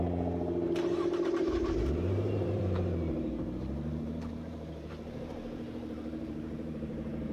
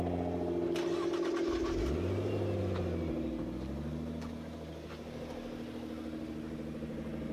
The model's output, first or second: first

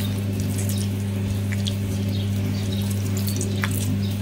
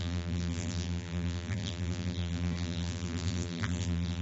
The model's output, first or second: second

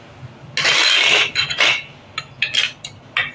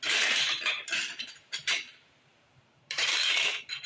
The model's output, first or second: second